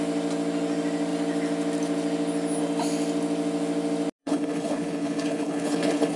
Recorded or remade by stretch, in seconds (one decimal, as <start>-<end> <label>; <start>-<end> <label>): 0.0-4.2 recorded; 4.2-6.2 remade